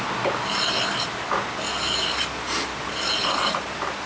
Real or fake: real